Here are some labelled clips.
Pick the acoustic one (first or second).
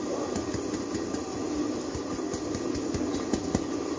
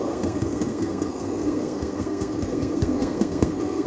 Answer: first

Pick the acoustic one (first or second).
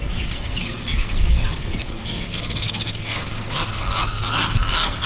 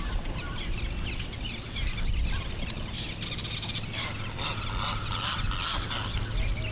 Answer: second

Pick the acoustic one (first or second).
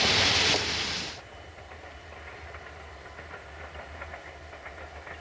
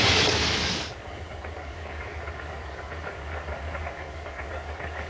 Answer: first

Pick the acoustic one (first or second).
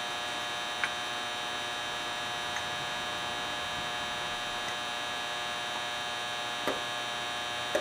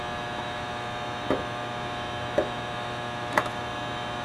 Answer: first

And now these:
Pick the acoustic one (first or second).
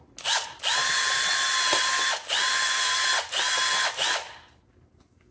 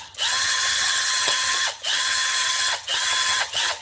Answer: first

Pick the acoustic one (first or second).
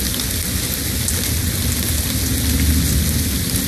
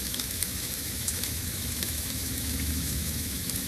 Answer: first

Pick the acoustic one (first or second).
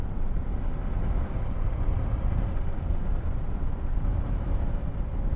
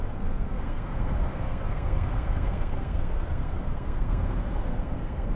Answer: first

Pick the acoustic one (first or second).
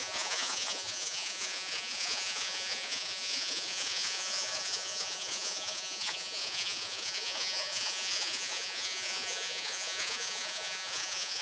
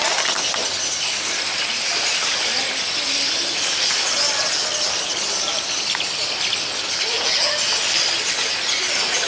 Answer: second